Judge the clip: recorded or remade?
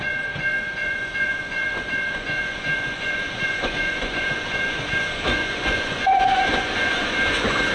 remade